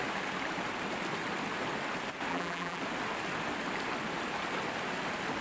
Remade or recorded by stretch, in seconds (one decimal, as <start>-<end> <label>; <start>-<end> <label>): 0.0-2.3 recorded; 2.3-2.8 remade; 2.8-5.4 recorded